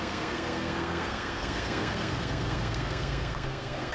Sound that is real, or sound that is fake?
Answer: fake